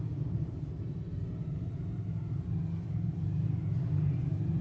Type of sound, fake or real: fake